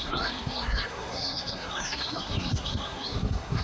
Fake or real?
fake